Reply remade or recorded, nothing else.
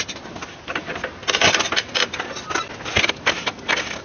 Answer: recorded